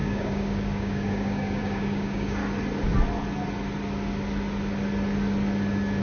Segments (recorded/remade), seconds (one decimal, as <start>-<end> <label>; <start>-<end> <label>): 0.0-2.4 remade; 2.4-6.0 recorded

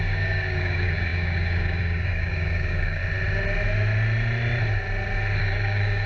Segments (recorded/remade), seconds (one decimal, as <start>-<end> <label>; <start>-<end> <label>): 0.0-3.0 remade; 3.0-5.4 recorded; 5.4-6.1 remade

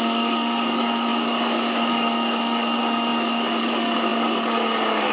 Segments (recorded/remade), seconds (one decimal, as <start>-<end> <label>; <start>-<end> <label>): 0.0-5.1 remade

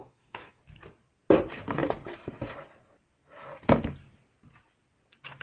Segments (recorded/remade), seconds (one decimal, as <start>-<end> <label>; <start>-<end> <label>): 0.0-0.6 remade; 0.6-5.4 recorded

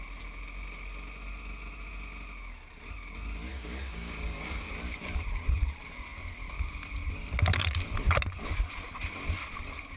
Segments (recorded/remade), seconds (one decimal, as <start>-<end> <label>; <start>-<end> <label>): 0.0-3.5 recorded; 3.5-4.7 remade; 4.7-10.0 recorded

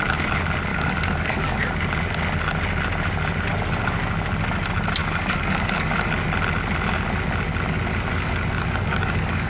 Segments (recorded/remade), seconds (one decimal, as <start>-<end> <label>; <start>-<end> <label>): 0.0-0.7 recorded; 0.7-1.6 remade; 1.6-5.0 recorded; 5.0-6.1 remade; 6.1-8.1 recorded; 8.1-9.5 remade

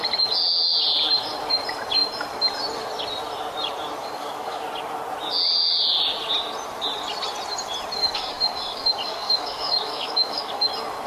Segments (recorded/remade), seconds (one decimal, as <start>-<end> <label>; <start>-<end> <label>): 0.0-4.0 recorded; 4.0-4.6 remade; 4.6-8.0 recorded; 8.0-10.7 remade; 10.7-11.1 recorded

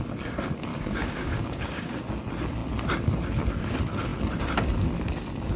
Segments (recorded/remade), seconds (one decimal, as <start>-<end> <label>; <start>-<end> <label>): 0.0-0.7 recorded; 0.7-2.0 remade; 2.0-5.6 recorded